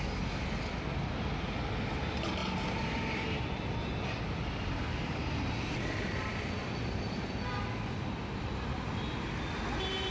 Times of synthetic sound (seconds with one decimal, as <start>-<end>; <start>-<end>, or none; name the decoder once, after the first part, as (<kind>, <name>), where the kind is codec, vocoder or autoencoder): none